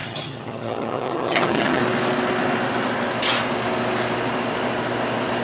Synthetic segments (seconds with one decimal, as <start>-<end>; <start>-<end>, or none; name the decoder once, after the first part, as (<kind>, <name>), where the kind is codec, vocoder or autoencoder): 0.0-1.8 (vocoder, HiFi-GAN)